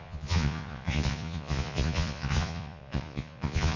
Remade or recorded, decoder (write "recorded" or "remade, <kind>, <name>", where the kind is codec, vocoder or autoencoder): remade, vocoder, Vocos